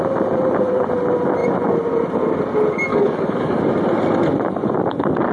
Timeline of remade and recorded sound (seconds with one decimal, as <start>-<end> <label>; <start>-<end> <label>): 0.0-2.9 recorded; 2.9-3.6 remade; 3.6-5.3 recorded